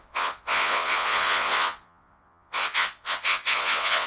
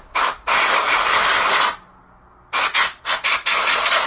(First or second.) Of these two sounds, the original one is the second